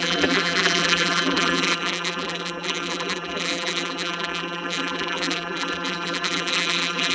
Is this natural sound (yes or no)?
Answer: no